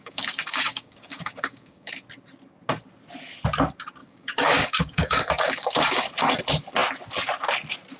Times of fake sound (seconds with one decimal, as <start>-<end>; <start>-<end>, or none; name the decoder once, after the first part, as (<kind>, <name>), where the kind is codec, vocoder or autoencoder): 0.0-1.9 (codec, DAC); 4.0-6.1